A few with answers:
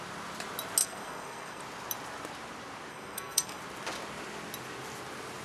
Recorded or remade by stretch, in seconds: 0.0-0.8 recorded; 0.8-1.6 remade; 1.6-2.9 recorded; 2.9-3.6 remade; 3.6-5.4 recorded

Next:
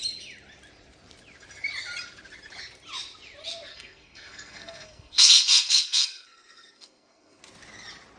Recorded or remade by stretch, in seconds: 0.0-3.7 recorded; 3.7-7.4 remade; 7.4-8.2 recorded

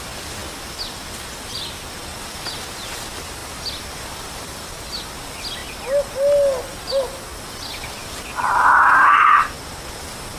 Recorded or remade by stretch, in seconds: 0.0-10.4 recorded

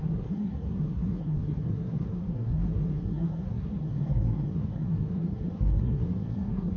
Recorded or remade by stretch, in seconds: 0.0-6.8 remade

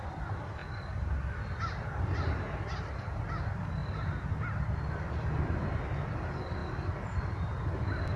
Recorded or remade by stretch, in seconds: 0.0-8.2 recorded

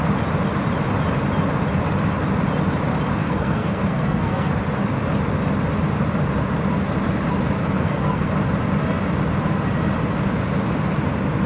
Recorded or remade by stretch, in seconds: 0.0-3.2 recorded; 3.2-4.5 remade; 4.5-7.8 recorded; 7.8-8.3 remade; 8.3-11.5 recorded

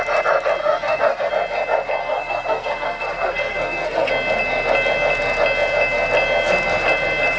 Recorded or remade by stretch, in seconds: 0.0-0.6 recorded; 0.6-1.3 remade; 1.3-2.0 recorded; 2.0-4.1 remade; 4.1-7.4 recorded

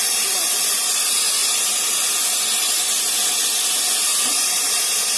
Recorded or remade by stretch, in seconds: 0.0-5.2 recorded